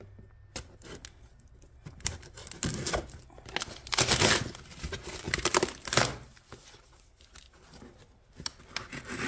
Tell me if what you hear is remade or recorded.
recorded